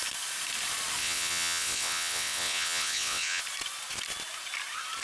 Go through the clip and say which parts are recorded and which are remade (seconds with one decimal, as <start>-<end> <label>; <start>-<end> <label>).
0.0-1.0 recorded; 1.0-3.4 remade; 3.4-5.0 recorded